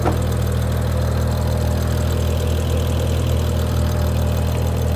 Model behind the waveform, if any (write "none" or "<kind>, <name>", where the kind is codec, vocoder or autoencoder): none